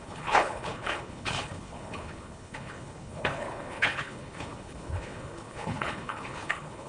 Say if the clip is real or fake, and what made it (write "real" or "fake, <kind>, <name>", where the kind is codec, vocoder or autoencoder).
fake, codec, HILCodec